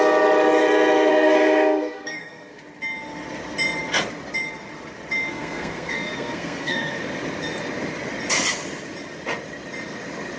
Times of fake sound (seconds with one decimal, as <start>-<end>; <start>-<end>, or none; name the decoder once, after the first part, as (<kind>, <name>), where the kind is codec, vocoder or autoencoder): 1.1-2.6 (codec, SNAC); 5.3-7.0